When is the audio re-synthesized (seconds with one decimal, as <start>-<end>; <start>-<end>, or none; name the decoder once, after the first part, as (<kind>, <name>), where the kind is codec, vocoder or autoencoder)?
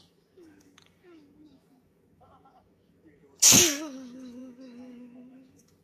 0.0-5.8 (codec, DAC)